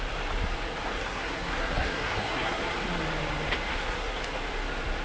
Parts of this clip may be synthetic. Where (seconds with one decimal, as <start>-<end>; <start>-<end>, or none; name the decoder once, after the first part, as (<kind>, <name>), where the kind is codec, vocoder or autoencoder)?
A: 1.0-2.7 (codec, SNAC); 3.7-4.2

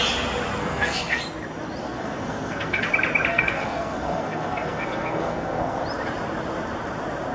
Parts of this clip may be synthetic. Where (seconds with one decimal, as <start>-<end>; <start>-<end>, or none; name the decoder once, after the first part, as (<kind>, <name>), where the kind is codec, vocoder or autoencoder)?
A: 0.6-1.2 (codec, SNAC); 1.8-2.9; 3.3-5.8

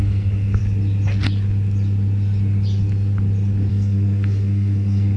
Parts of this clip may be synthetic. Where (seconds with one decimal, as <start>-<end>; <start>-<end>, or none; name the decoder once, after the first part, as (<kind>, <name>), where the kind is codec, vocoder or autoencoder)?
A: 0.0-0.6 (codec, SNAC); 3.7-5.2

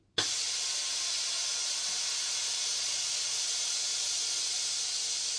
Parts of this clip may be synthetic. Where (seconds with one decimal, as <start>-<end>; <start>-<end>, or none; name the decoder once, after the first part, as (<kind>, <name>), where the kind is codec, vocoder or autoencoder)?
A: none

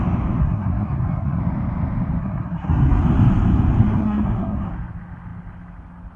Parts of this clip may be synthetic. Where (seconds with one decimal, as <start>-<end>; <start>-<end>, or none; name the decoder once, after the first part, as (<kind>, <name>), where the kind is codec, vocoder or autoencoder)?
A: 0.4-1.4 (codec, SNAC); 2.2-3.0; 3.8-4.7

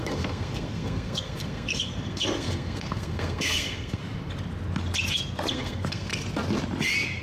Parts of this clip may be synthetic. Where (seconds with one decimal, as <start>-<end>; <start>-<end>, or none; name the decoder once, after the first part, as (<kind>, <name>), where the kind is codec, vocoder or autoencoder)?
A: 0.0-4.0 (codec, SNAC); 5.5-6.1

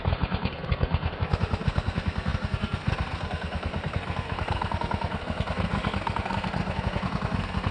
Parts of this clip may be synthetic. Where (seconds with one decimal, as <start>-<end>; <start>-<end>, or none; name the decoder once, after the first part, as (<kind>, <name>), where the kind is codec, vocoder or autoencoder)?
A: 0.0-7.7 (codec, SNAC)

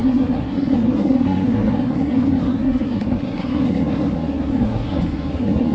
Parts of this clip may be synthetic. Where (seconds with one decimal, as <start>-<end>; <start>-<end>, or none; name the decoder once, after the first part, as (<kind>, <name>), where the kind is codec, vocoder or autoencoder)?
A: 0.0-5.7 (codec, SNAC)